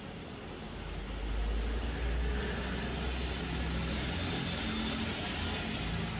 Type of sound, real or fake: real